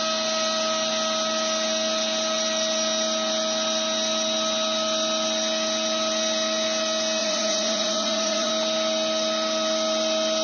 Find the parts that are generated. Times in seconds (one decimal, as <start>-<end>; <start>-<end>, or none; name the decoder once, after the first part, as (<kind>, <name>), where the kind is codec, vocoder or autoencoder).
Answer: 7.2-8.5 (vocoder, Vocos)